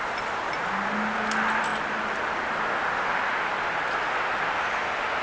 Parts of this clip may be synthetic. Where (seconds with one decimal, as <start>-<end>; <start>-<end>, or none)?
none